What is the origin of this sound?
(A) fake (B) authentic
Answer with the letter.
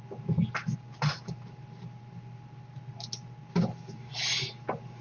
B